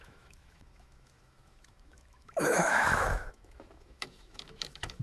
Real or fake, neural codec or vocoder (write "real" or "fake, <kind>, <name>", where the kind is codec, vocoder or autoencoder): fake, autoencoder, DAC-VAE